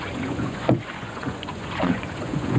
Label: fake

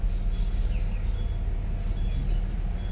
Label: real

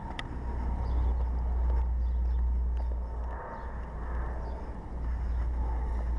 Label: real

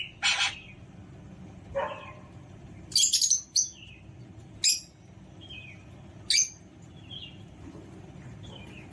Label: real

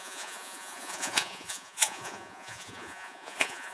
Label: fake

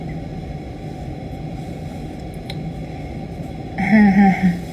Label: real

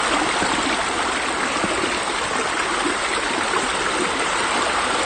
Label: real